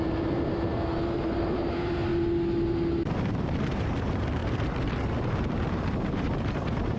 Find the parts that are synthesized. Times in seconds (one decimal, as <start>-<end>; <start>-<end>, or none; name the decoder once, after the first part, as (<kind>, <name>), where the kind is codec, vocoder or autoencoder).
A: 0.0-2.1 (vocoder, BigVGAN v2); 3.1-7.0